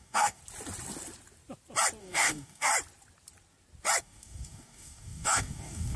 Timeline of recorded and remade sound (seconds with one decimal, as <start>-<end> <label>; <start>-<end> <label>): 0.0-0.4 remade; 0.4-2.0 recorded; 2.0-2.7 remade; 2.7-4.0 recorded; 4.0-6.0 remade